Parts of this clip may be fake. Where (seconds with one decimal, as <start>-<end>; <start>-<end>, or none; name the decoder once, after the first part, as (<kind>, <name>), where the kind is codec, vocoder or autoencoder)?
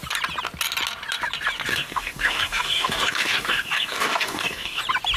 1.7-4.8 (codec, DAC)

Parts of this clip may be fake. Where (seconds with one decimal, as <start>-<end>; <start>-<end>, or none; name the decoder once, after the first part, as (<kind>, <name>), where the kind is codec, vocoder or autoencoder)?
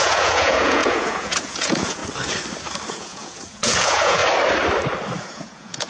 0.0-2.0 (vocoder, Vocos); 2.9-4.2; 5.2-5.9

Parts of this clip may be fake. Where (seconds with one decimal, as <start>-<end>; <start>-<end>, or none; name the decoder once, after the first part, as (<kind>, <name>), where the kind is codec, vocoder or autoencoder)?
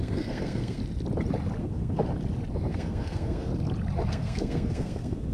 0.0-0.8 (codec, SNAC); 1.6-2.0; 2.7-3.5; 4.1-5.3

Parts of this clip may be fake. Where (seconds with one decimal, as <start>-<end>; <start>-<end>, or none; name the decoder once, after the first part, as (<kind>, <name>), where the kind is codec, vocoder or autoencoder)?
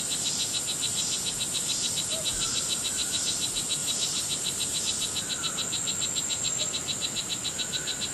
3.8-4.8 (vocoder, BigVGAN v2)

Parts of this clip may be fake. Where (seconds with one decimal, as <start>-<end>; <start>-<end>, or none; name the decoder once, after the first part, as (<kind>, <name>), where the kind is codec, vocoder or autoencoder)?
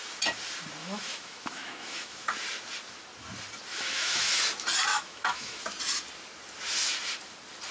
0.8-2.3 (autoencoder, DAC-VAE); 3.7-4.4; 4.9-5.6